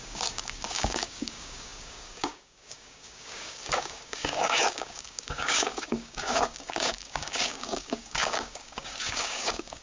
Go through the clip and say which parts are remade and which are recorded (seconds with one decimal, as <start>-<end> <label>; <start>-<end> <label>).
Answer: 0.0-9.8 remade